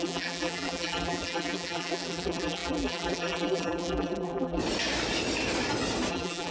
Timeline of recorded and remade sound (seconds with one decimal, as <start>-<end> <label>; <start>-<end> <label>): 0.0-4.6 remade; 4.6-6.1 recorded; 6.1-6.5 remade